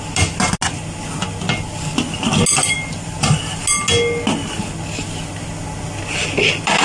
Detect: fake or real real